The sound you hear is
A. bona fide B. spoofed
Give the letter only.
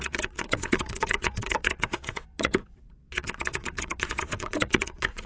B